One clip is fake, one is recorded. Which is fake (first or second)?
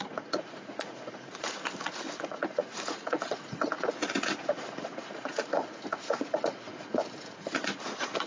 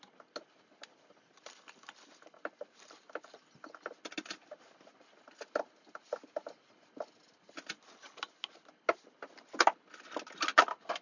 first